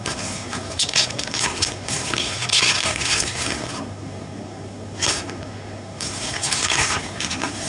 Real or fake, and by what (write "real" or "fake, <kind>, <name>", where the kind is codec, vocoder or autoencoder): fake, codec, SNAC